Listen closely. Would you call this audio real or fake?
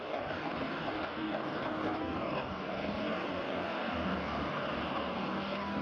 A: fake